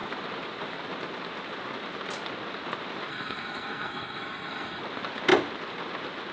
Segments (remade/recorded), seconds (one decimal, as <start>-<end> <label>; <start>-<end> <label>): 0.0-3.1 recorded; 3.1-4.8 remade; 4.8-6.3 recorded